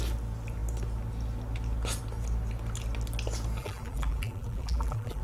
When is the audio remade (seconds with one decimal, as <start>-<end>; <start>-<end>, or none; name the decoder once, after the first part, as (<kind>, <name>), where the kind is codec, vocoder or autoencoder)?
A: 3.6-5.2 (vocoder, BigVGAN v2)